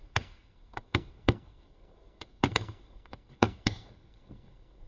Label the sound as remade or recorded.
remade